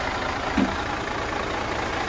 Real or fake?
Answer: real